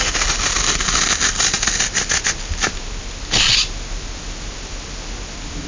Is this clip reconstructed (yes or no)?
no